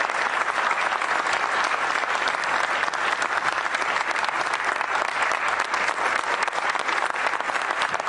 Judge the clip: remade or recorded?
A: recorded